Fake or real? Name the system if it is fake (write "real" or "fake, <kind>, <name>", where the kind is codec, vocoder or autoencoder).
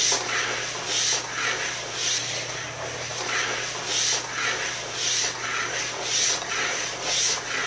real